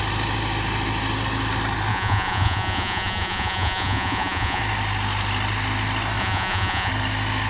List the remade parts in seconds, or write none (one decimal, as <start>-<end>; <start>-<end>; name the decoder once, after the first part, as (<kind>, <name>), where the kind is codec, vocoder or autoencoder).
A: 1.9-4.6 (vocoder, Vocos); 6.2-6.9